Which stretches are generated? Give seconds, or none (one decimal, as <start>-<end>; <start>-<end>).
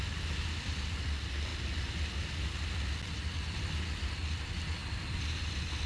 none